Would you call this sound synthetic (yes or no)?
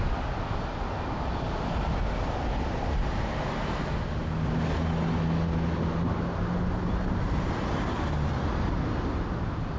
no